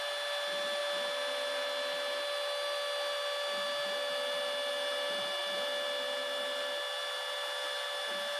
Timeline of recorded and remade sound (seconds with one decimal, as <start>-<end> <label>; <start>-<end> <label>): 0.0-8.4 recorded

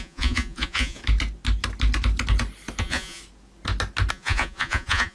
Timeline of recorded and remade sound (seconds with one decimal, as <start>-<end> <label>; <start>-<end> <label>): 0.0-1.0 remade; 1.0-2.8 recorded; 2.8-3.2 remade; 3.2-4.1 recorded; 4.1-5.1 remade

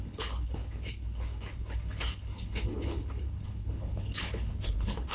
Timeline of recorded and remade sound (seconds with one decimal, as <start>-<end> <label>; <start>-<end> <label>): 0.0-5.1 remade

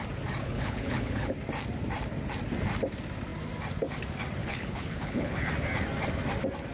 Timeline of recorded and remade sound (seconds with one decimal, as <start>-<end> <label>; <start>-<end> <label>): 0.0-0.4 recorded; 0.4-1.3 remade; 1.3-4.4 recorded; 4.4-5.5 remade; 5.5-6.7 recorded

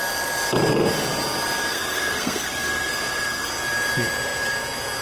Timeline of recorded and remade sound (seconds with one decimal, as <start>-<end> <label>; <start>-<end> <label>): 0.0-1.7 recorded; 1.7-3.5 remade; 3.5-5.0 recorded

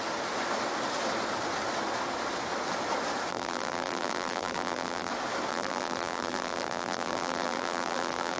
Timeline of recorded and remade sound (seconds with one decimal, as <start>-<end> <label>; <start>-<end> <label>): 0.0-3.3 recorded; 3.3-5.1 remade; 5.1-5.5 recorded; 5.5-8.4 remade